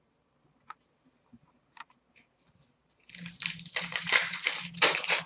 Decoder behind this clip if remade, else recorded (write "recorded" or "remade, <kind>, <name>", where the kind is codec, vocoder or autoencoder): remade, vocoder, BigVGAN v2